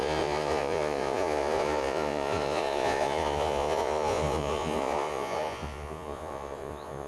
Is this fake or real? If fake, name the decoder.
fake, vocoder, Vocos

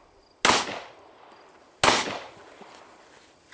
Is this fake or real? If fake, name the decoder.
real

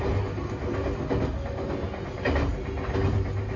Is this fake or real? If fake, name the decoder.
real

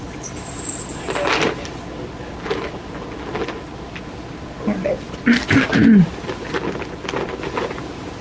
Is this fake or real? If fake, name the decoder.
real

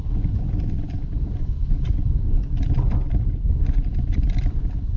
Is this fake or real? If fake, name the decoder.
real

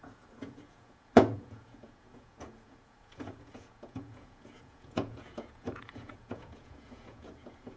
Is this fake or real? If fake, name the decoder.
fake, vocoder, Vocos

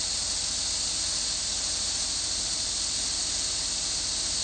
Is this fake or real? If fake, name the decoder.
real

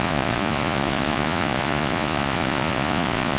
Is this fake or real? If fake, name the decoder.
fake, vocoder, Vocos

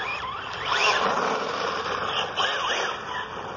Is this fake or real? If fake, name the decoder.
real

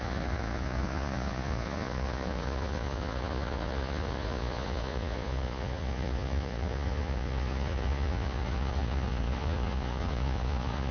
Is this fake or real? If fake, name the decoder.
fake, vocoder, Vocos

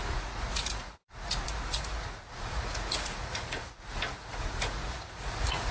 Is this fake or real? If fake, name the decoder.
fake, vocoder, Vocos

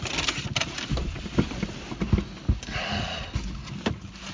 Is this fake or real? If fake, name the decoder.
real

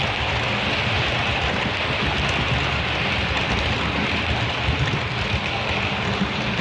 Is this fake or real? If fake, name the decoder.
real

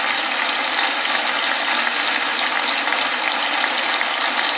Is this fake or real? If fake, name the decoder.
real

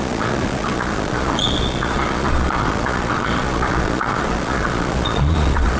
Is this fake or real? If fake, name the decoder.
fake, vocoder, Vocos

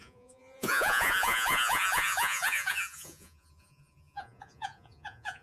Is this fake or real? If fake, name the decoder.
fake, vocoder, Vocos